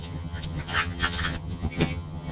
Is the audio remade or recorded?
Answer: remade